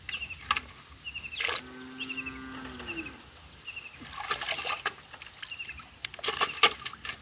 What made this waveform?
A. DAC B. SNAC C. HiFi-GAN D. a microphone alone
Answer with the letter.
D